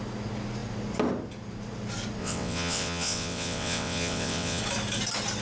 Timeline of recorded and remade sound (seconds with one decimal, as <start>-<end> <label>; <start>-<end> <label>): 0.0-2.2 recorded; 2.2-4.6 remade; 4.6-5.4 recorded